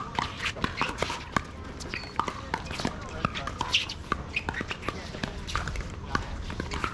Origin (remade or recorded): recorded